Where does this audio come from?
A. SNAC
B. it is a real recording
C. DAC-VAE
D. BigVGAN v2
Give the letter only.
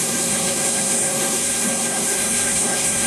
A